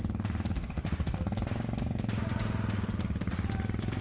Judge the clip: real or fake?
real